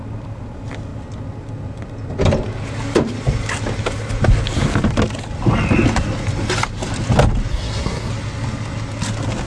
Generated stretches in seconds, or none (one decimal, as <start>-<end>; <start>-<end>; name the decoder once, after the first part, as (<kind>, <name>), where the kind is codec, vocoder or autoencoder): 7.5-8.1 (codec, SNAC)